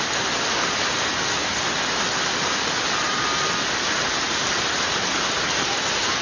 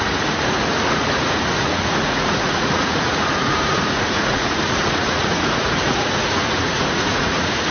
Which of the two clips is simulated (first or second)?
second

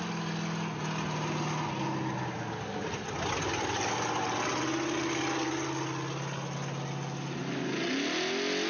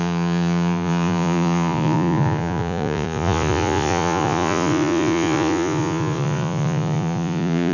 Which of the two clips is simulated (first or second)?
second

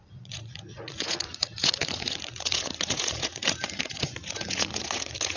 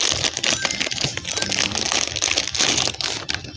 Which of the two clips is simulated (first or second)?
first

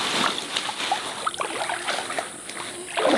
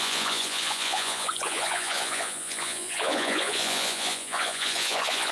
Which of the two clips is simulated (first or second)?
second